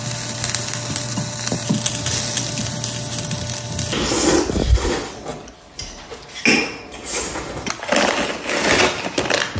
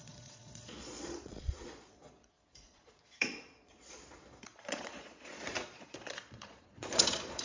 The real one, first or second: first